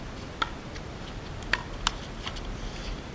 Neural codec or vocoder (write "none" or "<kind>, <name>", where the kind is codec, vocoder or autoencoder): none